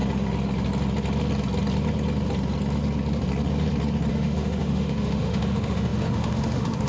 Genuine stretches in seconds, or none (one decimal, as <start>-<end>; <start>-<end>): 0.0-4.1